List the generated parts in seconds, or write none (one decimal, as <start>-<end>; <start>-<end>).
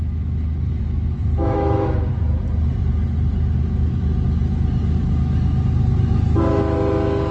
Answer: 0.0-2.1